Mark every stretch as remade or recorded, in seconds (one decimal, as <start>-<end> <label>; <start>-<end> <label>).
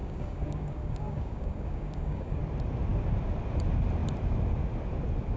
0.0-2.4 remade; 2.4-5.4 recorded